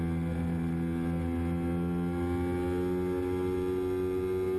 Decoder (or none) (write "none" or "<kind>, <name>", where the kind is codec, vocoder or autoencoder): none